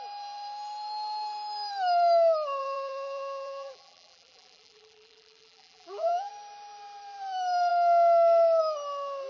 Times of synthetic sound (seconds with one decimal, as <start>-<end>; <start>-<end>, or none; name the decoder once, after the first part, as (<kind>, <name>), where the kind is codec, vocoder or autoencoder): 2.6-6.3 (vocoder, BigVGAN v2)